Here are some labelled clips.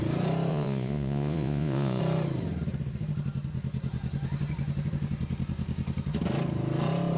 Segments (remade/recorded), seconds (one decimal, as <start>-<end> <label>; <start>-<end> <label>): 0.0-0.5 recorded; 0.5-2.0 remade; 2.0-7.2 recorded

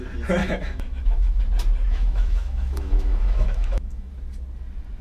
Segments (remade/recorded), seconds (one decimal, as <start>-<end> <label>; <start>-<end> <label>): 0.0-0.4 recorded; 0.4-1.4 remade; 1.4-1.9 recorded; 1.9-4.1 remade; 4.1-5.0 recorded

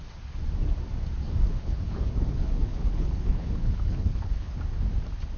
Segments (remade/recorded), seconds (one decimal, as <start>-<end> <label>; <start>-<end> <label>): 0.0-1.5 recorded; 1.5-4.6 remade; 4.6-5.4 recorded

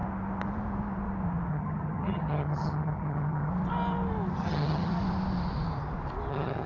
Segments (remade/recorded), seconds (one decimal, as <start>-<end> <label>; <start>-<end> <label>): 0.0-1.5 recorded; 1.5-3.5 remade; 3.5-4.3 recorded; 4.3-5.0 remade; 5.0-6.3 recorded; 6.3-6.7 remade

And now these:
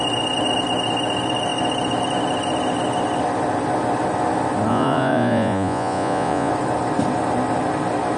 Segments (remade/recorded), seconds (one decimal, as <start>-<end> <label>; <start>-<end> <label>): 0.0-4.7 recorded; 4.7-6.5 remade; 6.5-8.2 recorded

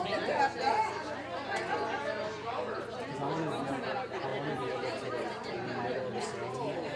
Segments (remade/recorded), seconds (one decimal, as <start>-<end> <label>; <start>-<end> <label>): 0.0-7.0 recorded

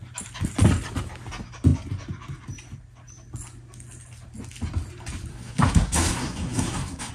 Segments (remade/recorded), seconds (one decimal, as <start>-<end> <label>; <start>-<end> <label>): 0.0-5.3 recorded; 5.3-7.1 remade

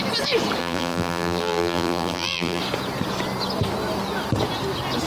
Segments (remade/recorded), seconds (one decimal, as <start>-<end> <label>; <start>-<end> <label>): 0.0-0.6 recorded; 0.6-2.6 remade; 2.6-5.1 recorded